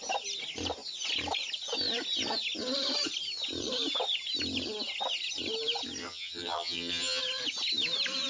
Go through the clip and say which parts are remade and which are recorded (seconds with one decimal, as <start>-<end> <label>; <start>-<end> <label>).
0.0-6.0 recorded; 6.0-7.2 remade; 7.2-8.3 recorded